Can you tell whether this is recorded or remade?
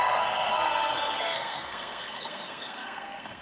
remade